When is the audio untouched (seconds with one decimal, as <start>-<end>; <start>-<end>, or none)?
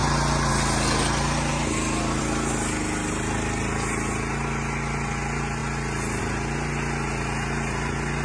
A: 0.0-8.2